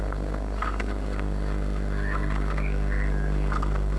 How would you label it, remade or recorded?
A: remade